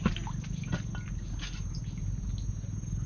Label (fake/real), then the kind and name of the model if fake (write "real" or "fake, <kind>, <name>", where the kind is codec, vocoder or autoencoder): real